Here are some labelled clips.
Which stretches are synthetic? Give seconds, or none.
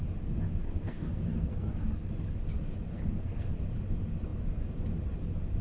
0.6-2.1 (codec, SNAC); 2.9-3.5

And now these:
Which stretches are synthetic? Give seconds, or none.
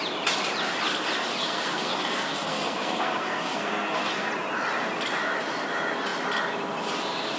1.4-4.3 (codec, SNAC)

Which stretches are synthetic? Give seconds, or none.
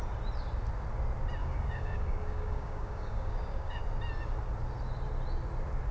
1.4-3.8 (codec, DAC)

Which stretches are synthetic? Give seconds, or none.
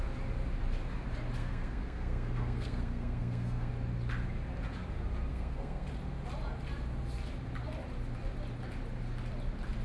1.4-3.7 (codec, SNAC); 5.3-5.9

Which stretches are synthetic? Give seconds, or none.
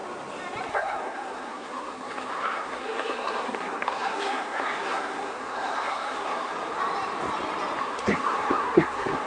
0.7-6.5 (codec, SNAC); 7.8-9.3